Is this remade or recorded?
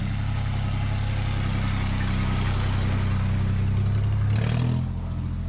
recorded